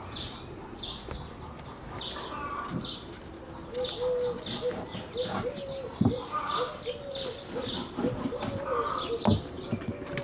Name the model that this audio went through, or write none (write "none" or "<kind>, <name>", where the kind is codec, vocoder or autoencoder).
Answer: none